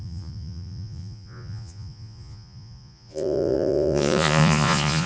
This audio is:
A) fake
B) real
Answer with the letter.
A